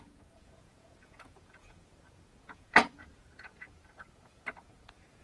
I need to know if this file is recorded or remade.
remade